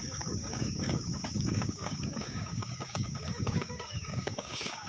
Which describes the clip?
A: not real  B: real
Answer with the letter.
A